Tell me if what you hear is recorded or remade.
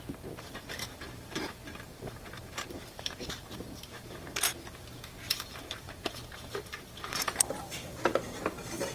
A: remade